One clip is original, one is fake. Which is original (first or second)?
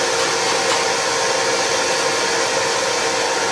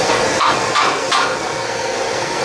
first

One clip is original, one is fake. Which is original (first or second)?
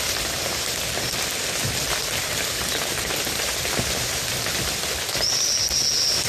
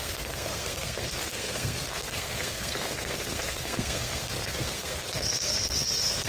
first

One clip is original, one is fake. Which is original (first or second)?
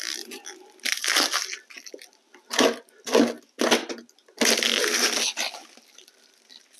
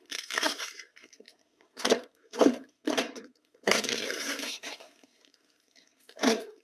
first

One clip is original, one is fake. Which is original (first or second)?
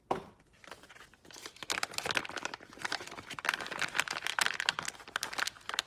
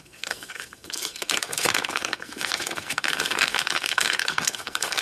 first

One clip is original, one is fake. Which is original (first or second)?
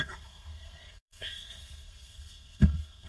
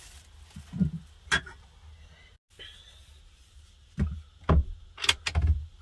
second